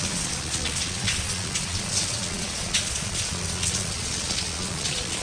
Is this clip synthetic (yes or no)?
yes